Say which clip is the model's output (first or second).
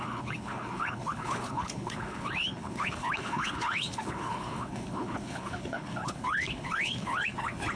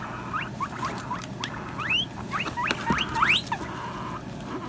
first